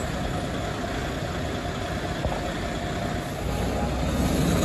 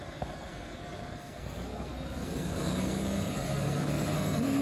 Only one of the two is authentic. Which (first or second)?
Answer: first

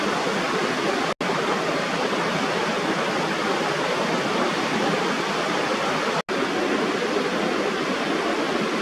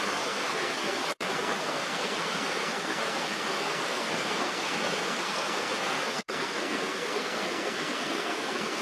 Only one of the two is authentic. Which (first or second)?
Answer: first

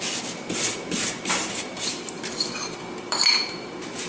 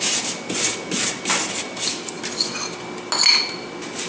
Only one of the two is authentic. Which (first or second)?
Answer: second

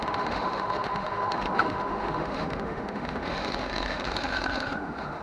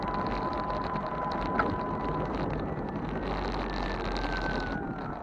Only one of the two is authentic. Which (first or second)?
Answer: second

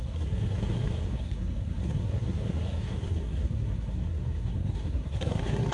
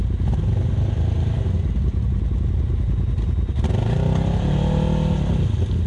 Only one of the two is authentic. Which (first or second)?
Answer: second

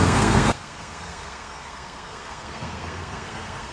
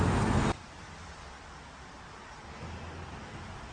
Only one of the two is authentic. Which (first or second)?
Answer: second